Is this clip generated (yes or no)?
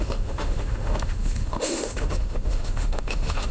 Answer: yes